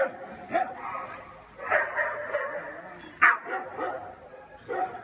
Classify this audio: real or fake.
real